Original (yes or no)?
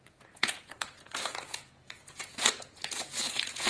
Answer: no